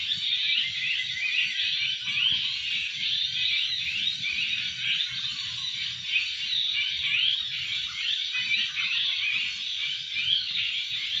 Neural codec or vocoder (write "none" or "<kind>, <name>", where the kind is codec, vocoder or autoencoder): none